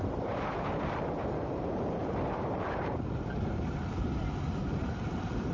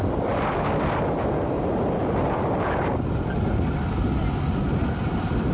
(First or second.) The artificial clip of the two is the first